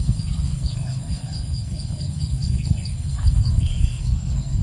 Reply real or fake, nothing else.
fake